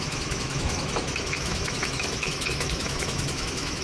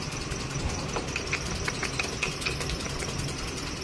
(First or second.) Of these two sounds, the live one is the second